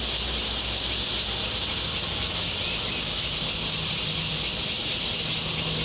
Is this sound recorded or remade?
recorded